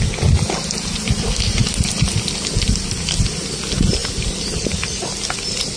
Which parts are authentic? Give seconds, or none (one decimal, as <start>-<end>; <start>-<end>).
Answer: 0.0-5.8